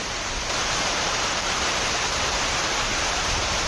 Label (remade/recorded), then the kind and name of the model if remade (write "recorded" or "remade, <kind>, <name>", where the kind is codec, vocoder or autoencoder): remade, vocoder, BigVGAN v2